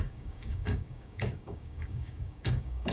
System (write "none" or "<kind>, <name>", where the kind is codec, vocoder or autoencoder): codec, DAC